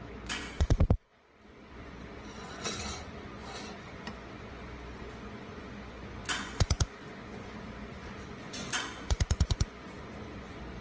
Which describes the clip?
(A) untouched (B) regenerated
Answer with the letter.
B